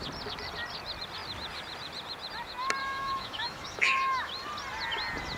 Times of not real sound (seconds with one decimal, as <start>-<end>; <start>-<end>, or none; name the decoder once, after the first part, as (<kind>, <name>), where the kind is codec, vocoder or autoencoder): 2.8-4.3 (autoencoder, DAC-VAE)